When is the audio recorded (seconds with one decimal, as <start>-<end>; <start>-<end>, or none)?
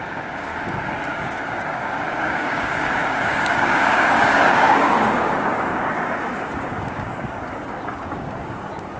0.5-1.1